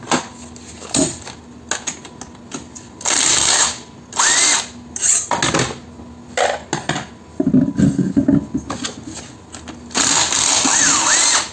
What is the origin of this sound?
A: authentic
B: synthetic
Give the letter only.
A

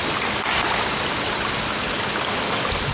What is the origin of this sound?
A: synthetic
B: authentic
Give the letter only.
B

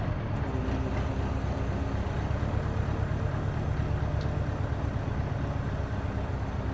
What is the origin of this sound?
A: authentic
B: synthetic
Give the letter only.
A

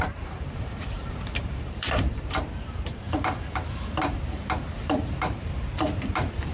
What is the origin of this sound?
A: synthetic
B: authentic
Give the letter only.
A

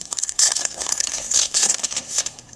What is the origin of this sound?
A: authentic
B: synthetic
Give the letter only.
B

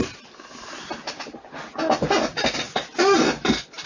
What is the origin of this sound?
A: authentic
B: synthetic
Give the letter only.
A